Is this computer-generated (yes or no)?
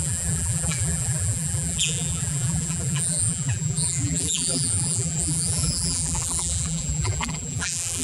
yes